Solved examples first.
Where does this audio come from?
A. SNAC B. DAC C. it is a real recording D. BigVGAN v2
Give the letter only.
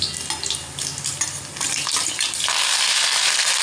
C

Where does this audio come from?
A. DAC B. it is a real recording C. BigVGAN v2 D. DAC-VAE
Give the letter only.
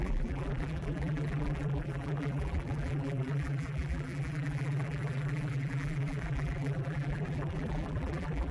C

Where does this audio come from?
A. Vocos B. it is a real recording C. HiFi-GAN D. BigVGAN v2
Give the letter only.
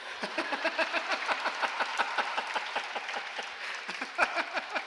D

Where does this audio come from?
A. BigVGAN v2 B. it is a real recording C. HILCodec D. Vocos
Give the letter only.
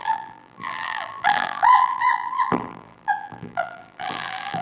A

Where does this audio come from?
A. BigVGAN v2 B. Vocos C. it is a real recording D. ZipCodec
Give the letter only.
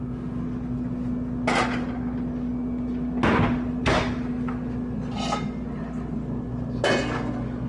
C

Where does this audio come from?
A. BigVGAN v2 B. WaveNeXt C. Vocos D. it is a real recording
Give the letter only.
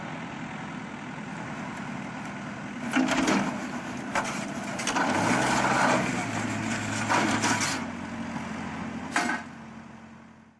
D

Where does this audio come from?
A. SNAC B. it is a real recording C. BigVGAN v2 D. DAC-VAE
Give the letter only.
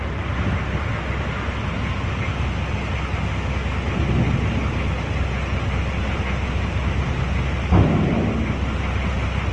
B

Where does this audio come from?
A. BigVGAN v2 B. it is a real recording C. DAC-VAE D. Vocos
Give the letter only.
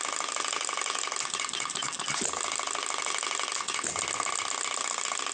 B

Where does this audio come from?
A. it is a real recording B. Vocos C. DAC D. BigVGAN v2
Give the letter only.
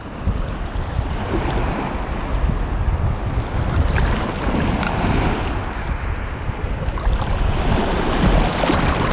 A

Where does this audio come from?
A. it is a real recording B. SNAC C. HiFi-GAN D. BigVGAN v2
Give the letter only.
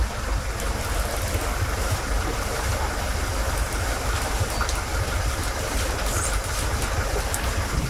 A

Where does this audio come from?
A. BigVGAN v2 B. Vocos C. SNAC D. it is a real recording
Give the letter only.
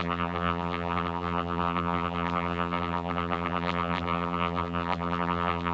A